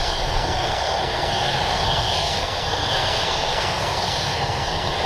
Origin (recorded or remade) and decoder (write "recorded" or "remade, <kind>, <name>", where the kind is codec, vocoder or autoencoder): remade, codec, SNAC